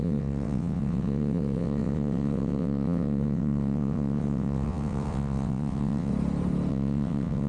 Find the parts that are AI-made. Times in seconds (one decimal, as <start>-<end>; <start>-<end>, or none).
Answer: 0.0-6.1; 6.7-7.5